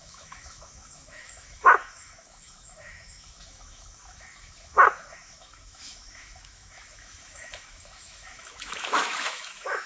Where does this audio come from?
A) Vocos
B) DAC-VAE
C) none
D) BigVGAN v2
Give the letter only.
B